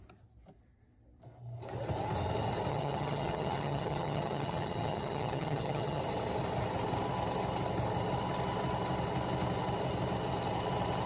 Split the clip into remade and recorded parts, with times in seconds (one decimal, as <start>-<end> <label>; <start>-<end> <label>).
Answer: 0.0-2.7 recorded; 2.7-6.0 remade; 6.0-11.1 recorded

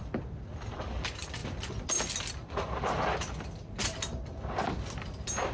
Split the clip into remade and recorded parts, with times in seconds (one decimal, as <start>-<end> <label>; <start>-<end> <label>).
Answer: 0.0-5.5 recorded